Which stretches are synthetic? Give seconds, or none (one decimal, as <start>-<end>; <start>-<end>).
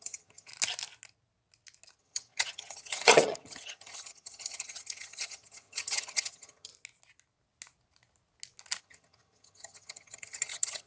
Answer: 0.0-0.5; 2.0-6.7; 8.8-10.9